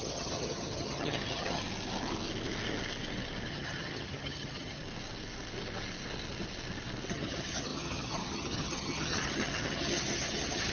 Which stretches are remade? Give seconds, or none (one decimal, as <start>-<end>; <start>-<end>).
0.0-1.6; 3.5-4.8; 7.1-10.7